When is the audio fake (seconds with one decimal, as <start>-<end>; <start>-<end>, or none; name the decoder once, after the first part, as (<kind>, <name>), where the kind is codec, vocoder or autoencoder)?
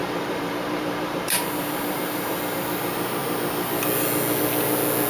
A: 0.0-2.4 (vocoder, BigVGAN v2)